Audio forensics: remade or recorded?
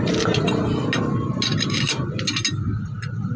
recorded